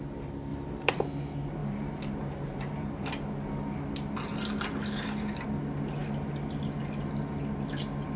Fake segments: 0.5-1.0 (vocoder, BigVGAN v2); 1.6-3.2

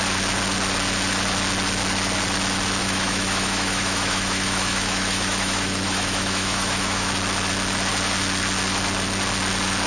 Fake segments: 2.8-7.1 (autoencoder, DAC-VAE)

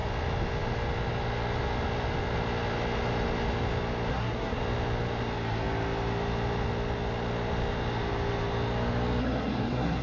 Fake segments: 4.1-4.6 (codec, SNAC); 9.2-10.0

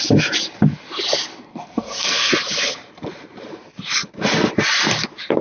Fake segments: 1.5-2.3 (codec, SNAC)

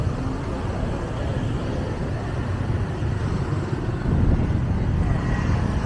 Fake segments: none

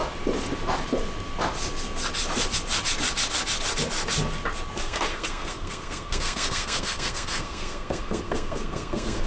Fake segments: 4.8-9.3 (codec, SNAC)

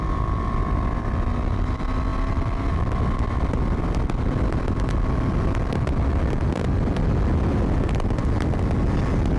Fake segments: none